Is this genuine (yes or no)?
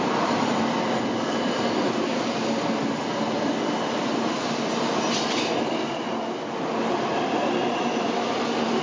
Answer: yes